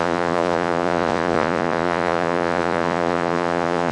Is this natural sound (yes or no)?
no